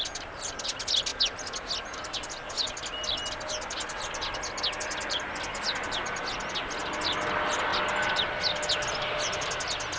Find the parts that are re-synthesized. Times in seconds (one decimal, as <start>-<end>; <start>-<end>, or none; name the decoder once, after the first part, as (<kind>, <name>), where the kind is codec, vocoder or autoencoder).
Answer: none